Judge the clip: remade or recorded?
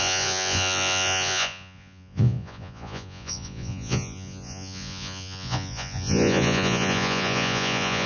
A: remade